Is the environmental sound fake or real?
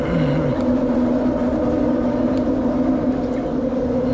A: real